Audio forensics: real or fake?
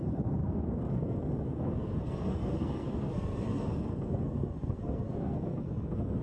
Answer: fake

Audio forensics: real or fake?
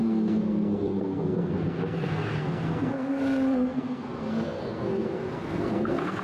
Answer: fake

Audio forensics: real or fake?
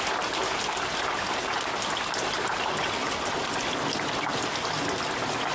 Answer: real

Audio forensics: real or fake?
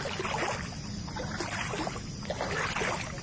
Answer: real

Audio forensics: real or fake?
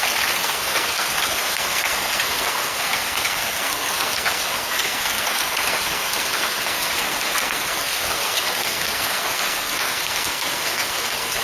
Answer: fake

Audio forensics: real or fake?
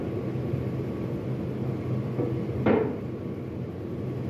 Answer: real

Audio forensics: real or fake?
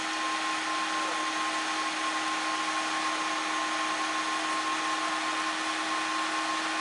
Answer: real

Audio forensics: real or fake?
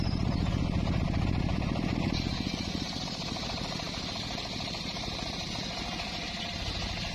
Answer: real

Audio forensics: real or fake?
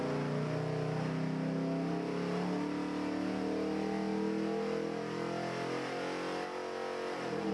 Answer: real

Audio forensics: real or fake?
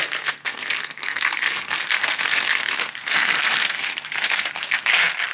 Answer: fake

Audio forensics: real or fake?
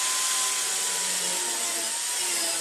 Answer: real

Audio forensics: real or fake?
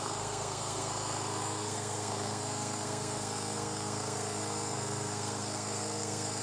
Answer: fake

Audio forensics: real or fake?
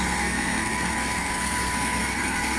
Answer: fake